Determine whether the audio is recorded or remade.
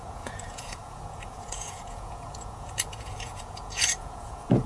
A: remade